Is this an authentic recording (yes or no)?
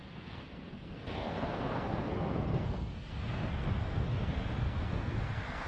no